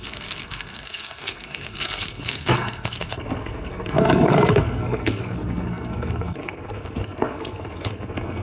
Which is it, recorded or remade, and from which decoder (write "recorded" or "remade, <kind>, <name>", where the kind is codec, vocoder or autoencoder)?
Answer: remade, codec, SNAC